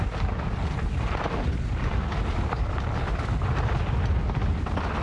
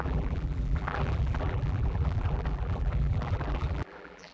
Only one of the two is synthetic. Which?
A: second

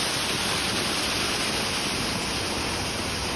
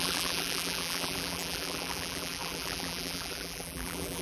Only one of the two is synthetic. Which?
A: second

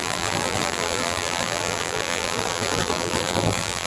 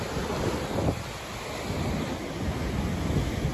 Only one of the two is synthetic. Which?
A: first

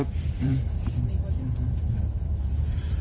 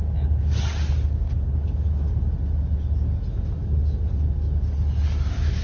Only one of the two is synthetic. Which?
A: first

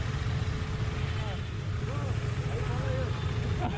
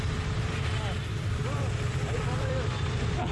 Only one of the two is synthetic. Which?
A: second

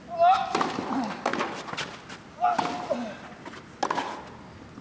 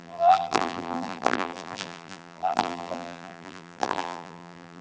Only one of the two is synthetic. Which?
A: second